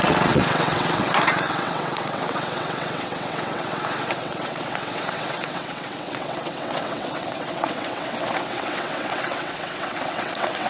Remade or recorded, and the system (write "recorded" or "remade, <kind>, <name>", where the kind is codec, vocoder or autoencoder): remade, vocoder, WaveNeXt